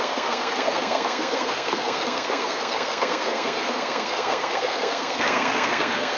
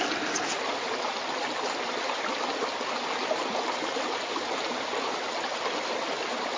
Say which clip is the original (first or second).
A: second